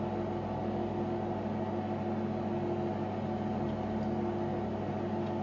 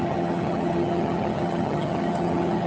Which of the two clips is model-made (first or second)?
second